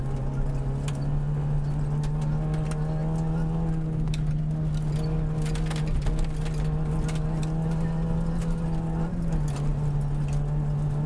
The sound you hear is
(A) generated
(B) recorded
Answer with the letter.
B